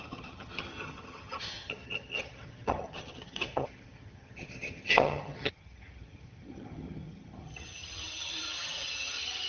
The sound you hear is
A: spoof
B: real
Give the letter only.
A